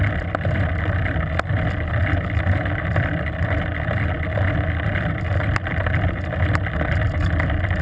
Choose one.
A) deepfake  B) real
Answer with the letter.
B